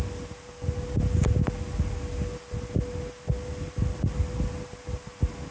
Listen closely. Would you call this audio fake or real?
real